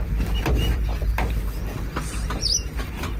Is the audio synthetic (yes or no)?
no